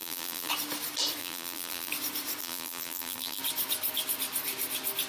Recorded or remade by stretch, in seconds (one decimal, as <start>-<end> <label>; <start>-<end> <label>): 0.0-0.5 remade; 0.5-1.2 recorded; 1.2-1.9 remade; 1.9-2.4 recorded; 2.4-3.4 remade; 3.4-5.1 recorded